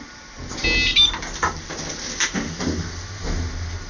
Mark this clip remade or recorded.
recorded